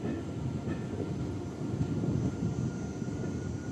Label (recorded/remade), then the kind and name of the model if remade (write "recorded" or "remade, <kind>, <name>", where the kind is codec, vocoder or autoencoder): recorded